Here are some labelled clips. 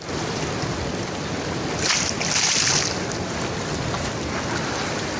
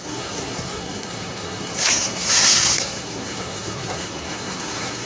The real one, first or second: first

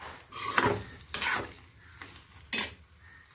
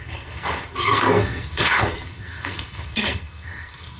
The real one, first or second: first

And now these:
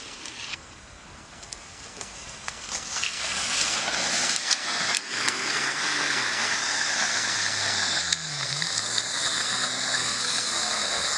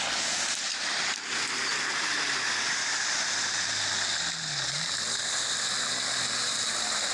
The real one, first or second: second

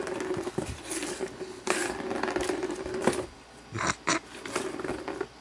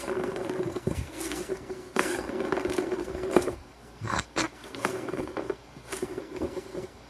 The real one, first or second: first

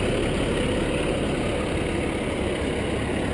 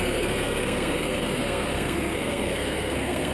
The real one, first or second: first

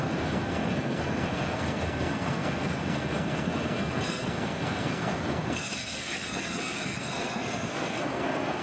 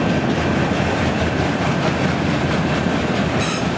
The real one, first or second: second